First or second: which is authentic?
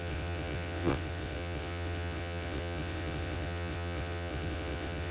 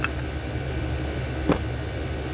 second